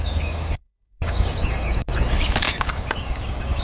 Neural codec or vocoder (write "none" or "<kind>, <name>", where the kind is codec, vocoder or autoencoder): codec, DAC